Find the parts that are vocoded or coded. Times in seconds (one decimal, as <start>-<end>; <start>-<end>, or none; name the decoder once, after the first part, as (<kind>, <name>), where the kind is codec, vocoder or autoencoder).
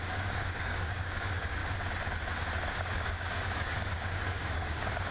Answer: 0.0-1.6 (codec, DAC); 2.7-5.1